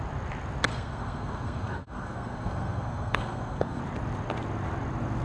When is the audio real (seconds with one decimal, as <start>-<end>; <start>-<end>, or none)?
0.0-0.7; 3.8-5.2